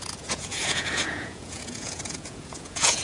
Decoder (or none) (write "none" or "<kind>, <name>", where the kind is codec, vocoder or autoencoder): vocoder, Vocos